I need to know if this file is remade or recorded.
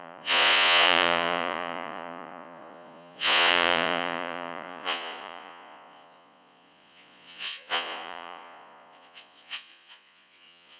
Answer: remade